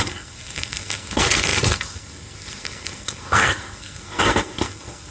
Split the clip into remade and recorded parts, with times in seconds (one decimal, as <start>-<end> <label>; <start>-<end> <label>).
0.0-5.1 remade